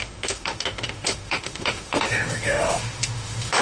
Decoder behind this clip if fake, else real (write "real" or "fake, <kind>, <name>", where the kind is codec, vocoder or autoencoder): fake, autoencoder, DAC-VAE